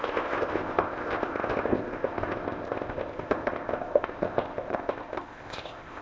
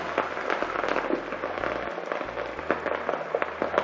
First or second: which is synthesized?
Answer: first